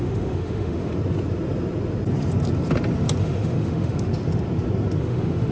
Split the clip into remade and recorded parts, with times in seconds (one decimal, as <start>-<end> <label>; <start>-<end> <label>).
0.0-0.9 remade; 0.9-3.2 recorded; 3.2-4.1 remade; 4.1-5.0 recorded; 5.0-5.5 remade